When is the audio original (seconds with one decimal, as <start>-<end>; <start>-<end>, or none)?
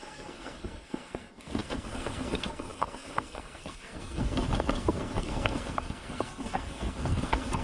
none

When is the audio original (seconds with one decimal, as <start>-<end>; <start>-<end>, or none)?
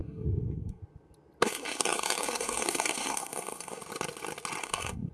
0.8-1.4; 3.8-4.6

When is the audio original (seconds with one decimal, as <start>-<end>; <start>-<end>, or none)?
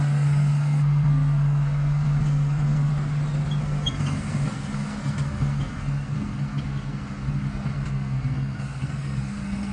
2.9-3.6